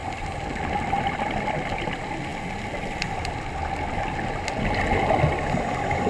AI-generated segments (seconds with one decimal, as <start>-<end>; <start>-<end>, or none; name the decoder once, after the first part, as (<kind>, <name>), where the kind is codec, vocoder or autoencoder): none